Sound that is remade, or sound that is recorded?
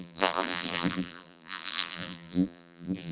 remade